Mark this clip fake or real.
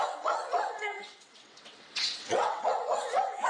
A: fake